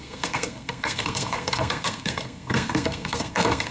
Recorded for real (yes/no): no